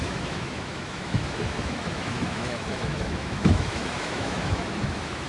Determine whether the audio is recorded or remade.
remade